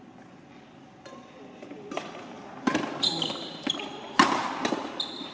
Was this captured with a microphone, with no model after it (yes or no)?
yes